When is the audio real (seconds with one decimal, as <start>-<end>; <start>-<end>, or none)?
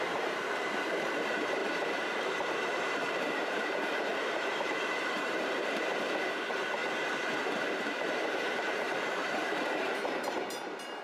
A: 1.6-2.2; 6.8-7.4